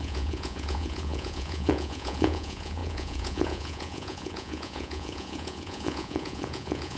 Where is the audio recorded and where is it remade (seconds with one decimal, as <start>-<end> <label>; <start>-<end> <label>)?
0.0-7.0 remade

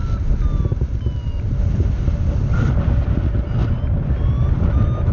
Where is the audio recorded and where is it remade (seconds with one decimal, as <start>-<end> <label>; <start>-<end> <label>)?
0.0-5.1 recorded

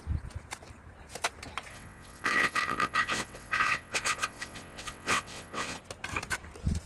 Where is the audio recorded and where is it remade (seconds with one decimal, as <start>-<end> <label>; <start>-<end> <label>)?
0.0-1.7 recorded; 1.7-5.8 remade; 5.8-6.9 recorded